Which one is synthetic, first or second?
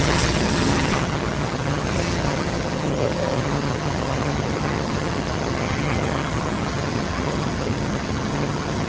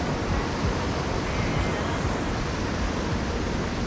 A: first